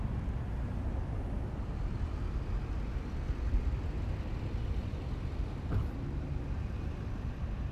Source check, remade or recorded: recorded